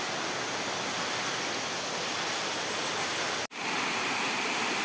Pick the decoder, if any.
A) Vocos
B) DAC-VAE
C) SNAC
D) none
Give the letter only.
D